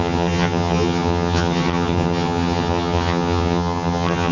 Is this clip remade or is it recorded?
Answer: remade